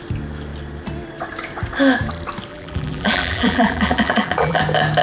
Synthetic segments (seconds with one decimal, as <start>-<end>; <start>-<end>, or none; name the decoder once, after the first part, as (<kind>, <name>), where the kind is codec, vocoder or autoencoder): 2.5-4.6 (vocoder, BigVGAN v2)